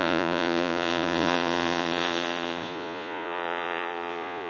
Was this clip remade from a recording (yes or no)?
yes